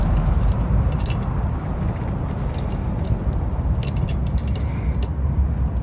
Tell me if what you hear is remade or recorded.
recorded